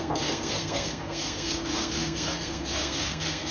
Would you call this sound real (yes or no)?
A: no